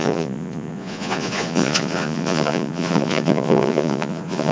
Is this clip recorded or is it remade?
remade